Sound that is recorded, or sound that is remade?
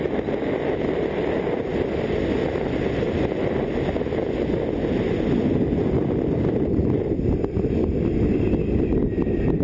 recorded